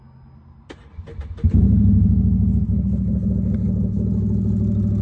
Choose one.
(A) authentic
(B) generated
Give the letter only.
A